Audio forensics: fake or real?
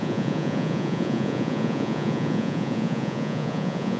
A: fake